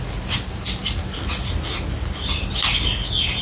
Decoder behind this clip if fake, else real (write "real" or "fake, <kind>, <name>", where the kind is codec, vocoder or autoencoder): real